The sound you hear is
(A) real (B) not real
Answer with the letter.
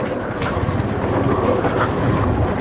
A